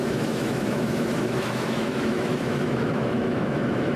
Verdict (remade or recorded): remade